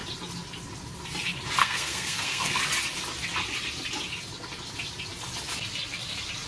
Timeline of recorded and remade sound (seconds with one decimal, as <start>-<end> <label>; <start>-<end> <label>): 0.0-1.6 recorded; 1.6-2.6 remade; 2.6-6.5 recorded